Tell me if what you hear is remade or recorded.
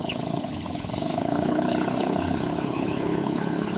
remade